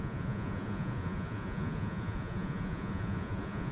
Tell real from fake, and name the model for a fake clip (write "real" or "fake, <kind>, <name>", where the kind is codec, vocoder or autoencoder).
fake, vocoder, Vocos